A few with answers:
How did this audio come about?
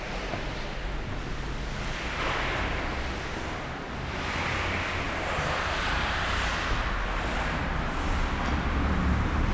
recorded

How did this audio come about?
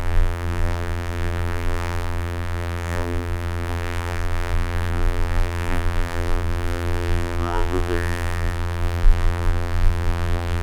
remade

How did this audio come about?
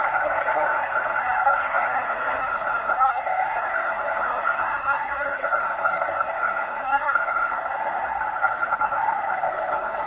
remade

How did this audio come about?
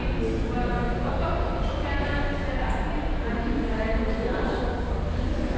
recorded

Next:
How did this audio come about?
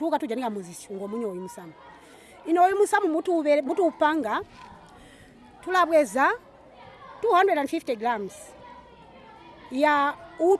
recorded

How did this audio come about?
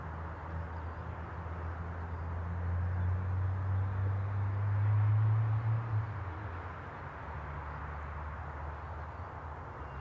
recorded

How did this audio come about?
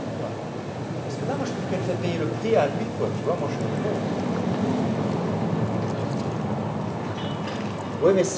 recorded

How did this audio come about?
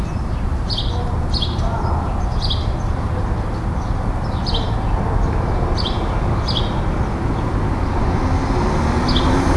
recorded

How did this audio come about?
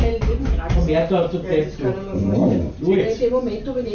recorded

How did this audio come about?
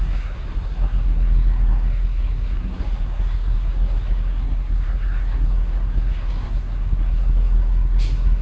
remade